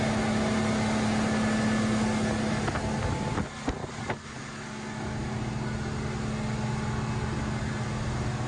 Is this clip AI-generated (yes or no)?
no